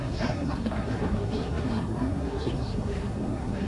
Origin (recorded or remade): remade